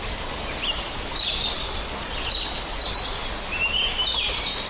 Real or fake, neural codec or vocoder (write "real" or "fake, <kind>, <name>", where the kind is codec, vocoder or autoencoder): real